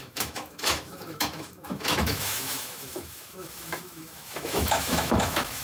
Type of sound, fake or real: fake